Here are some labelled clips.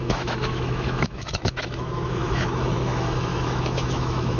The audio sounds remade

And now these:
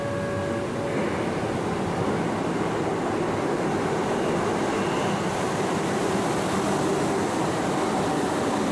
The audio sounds recorded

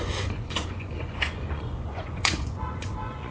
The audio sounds remade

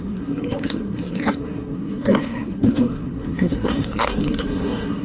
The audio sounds remade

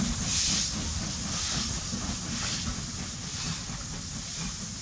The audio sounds recorded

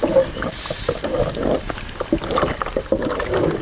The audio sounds recorded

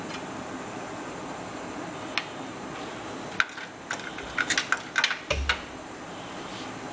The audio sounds recorded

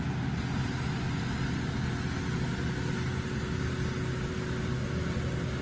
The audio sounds recorded